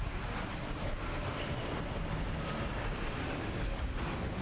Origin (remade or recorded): recorded